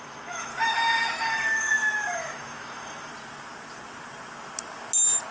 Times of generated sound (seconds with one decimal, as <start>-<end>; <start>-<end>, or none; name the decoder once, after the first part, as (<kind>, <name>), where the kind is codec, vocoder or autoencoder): 0.0-0.5 (autoencoder, DAC-VAE); 1.2-3.1